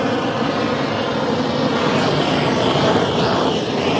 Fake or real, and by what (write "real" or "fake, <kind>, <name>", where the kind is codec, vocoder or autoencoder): real